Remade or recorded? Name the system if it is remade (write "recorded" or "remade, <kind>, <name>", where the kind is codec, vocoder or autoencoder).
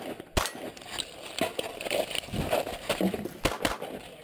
recorded